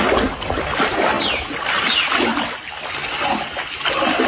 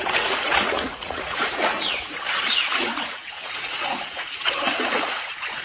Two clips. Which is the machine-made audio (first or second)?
second